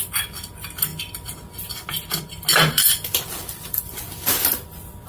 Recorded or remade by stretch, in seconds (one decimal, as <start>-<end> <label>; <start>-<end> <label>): 0.0-5.1 recorded